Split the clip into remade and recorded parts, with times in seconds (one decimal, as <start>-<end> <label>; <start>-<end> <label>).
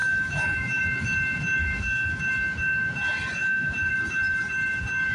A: 0.0-0.8 remade; 0.8-1.6 recorded; 1.6-2.2 remade; 2.2-3.4 recorded; 3.4-3.9 remade; 3.9-5.1 recorded